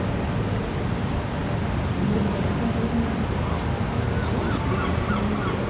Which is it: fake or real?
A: real